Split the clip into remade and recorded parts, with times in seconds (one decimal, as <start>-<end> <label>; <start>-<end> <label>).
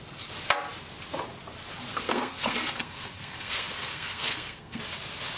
0.0-1.9 recorded; 1.9-4.8 remade; 4.8-5.4 recorded